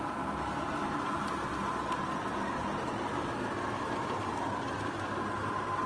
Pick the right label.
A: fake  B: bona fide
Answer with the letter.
B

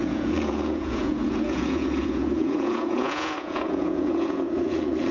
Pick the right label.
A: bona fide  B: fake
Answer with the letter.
B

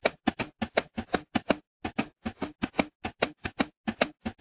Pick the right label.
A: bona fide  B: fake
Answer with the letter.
A